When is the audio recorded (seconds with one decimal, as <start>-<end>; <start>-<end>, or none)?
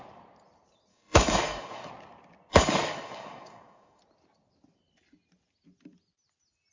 0.0-0.9; 1.9-2.5; 4.0-6.7